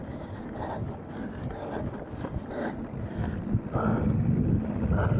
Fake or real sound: real